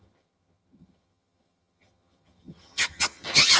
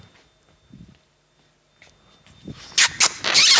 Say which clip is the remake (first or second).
first